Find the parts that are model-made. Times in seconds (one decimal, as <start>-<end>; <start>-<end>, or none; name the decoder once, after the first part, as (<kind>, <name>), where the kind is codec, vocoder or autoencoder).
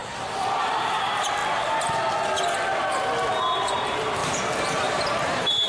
0.0-1.4 (vocoder, BigVGAN v2); 3.6-5.7